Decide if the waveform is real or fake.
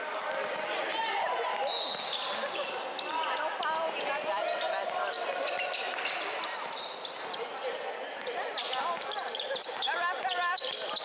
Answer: real